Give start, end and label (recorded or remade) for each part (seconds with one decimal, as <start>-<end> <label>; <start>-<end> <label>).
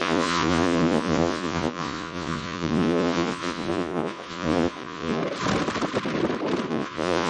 0.0-5.2 remade; 5.2-6.7 recorded; 6.7-7.3 remade